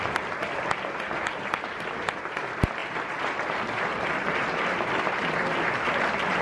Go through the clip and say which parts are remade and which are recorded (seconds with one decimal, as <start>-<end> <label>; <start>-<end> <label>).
0.0-6.4 recorded